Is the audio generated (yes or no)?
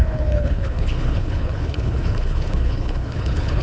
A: yes